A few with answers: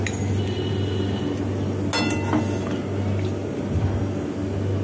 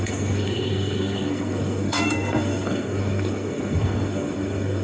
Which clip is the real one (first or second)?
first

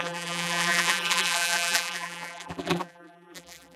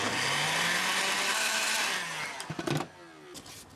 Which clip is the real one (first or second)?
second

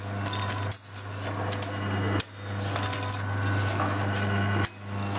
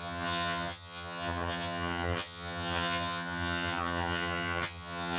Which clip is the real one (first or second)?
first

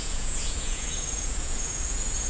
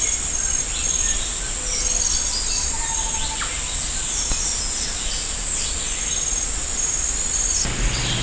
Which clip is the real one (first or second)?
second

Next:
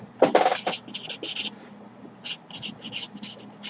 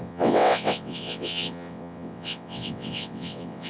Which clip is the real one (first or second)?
first